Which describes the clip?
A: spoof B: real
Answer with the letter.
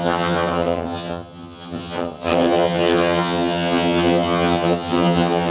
A